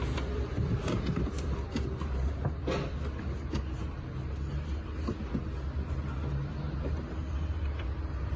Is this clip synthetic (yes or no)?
no